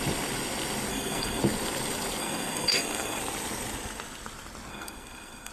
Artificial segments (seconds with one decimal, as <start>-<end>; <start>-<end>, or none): 0.9-1.4; 2.2-3.2; 4.7-5.5